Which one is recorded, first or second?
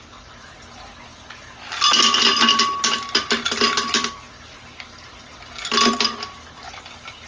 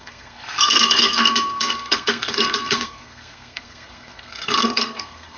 first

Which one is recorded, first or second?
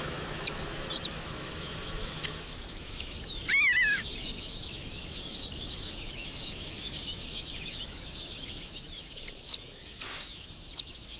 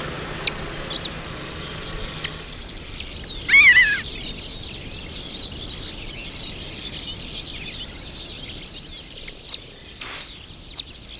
second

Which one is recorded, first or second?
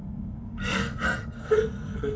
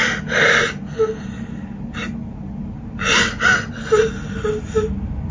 second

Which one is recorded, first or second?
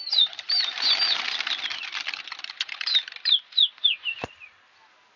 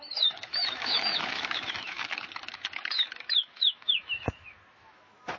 first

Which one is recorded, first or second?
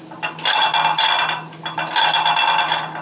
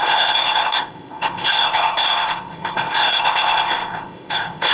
first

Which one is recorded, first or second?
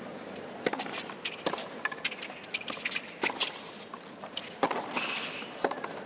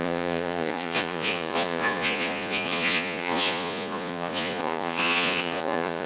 first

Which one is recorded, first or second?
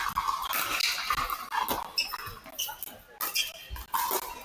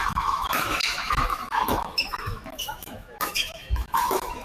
first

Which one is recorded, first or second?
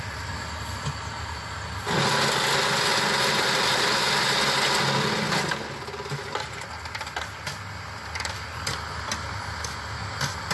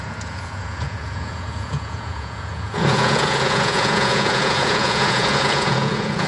first